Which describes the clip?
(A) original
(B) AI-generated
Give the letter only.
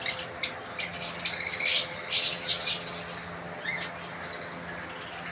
A